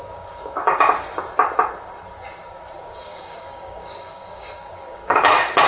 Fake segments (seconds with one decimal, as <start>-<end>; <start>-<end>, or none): 0.0-0.6; 2.8-5.0